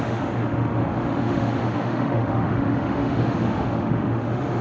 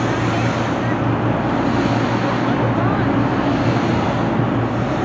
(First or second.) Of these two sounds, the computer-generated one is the first